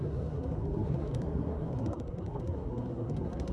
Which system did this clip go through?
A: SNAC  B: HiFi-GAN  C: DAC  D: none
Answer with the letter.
A